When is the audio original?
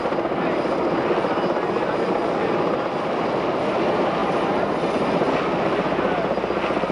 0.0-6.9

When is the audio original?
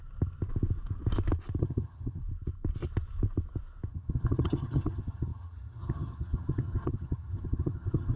0.0-1.6; 2.2-3.9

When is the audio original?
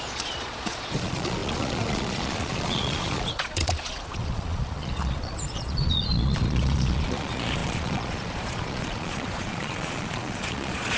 none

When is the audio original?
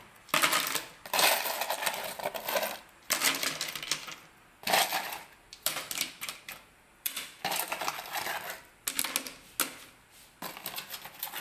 0.0-4.9; 8.3-11.4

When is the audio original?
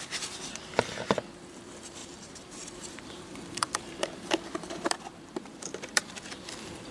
0.0-2.0; 6.1-6.9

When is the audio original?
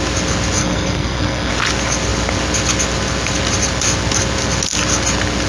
0.0-0.6; 1.5-5.5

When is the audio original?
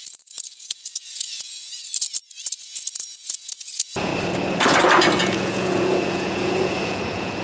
1.8-2.6; 4.1-5.2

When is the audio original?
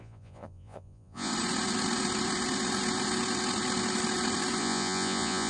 1.3-4.6